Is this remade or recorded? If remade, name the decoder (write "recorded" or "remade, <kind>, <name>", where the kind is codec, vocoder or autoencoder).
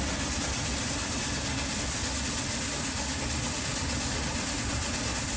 recorded